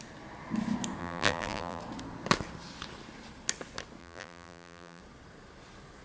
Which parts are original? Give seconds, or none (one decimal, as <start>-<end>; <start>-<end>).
0.0-1.0; 1.8-4.0; 5.0-6.0